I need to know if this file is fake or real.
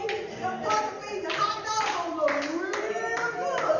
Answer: real